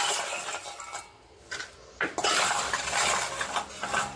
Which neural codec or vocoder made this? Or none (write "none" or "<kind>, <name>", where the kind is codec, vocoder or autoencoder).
none